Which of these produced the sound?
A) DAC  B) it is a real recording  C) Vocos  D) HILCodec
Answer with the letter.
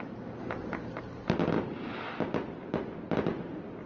B